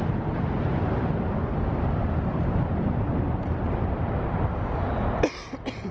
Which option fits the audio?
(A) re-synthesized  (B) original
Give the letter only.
B